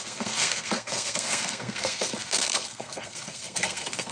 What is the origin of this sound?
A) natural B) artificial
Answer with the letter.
B